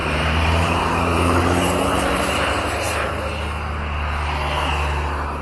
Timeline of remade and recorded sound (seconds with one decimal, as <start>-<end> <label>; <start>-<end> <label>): 0.0-3.2 remade; 3.2-5.4 recorded